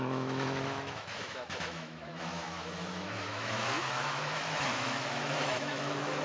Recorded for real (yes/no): no